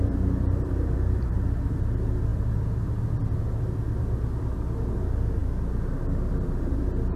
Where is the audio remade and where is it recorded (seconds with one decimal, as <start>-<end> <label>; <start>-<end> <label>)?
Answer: 0.0-5.4 remade; 5.4-6.3 recorded; 6.3-7.2 remade